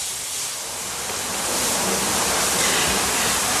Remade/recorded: remade